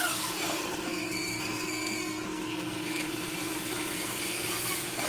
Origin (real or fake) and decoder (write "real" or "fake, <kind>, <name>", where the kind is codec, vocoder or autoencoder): fake, codec, SNAC